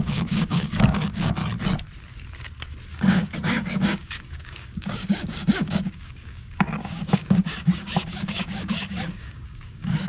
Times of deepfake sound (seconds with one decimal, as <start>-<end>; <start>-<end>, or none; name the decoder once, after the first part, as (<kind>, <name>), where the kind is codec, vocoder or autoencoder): 0.0-1.4 (codec, DAC); 2.9-10.1